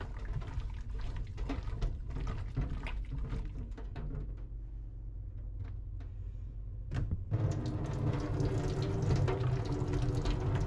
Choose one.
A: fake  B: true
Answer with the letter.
B